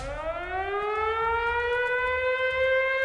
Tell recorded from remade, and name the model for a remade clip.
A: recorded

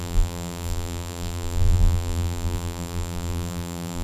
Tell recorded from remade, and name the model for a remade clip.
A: remade, vocoder, BigVGAN v2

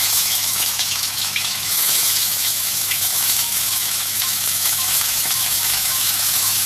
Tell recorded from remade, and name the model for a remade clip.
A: remade, autoencoder, DAC-VAE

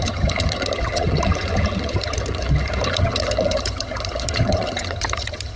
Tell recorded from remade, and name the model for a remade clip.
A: remade, vocoder, HiFi-GAN